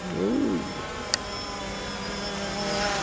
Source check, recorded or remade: recorded